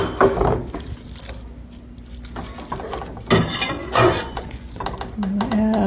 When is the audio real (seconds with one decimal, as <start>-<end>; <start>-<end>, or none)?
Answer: 0.0-3.8; 4.7-5.9